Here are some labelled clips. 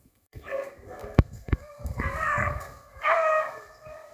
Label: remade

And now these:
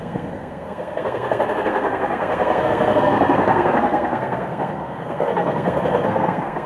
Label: remade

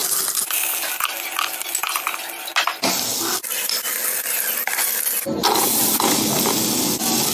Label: recorded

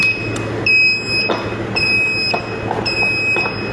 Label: recorded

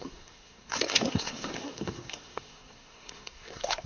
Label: remade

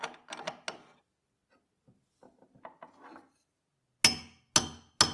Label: recorded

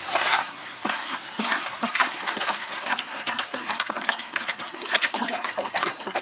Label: remade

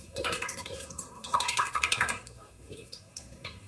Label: remade